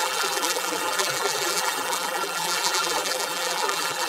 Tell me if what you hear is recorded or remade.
remade